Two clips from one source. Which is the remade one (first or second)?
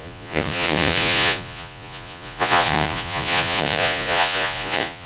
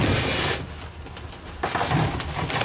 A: first